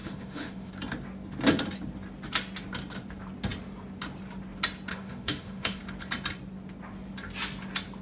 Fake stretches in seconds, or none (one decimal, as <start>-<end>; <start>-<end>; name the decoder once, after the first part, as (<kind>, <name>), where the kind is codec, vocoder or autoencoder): 0.0-0.7 (autoencoder, DAC-VAE); 4.9-5.8